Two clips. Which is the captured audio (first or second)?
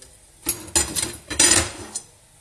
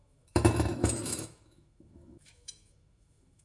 first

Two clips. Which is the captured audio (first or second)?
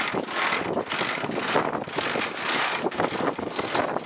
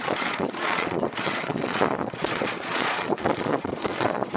first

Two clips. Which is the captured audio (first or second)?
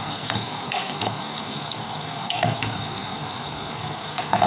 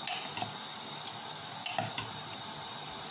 second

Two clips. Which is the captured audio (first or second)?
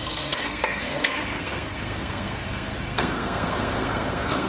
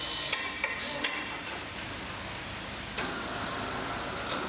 second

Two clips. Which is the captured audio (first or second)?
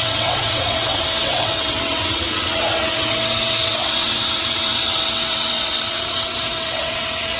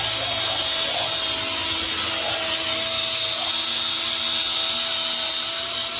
second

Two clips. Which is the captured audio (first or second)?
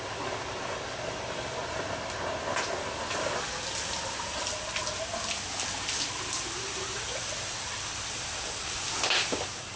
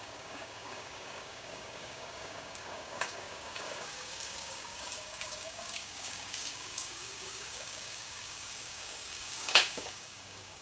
first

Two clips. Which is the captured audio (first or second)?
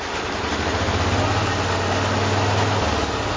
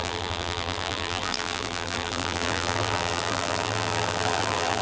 first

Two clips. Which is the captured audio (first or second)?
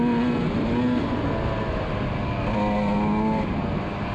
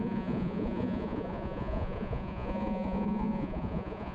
first